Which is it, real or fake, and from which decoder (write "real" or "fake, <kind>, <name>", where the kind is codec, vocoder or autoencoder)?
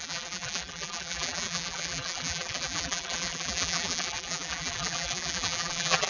fake, vocoder, BigVGAN v2